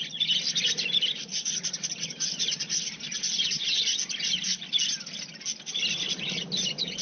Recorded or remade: recorded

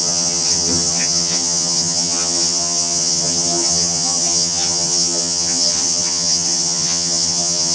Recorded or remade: remade